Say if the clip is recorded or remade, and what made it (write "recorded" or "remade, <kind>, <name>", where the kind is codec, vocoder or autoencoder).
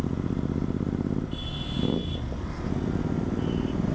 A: recorded